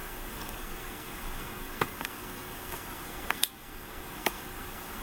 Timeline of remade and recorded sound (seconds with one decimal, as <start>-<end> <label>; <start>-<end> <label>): 0.0-5.0 remade